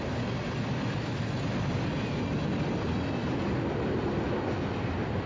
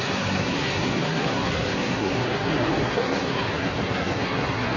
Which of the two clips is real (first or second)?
first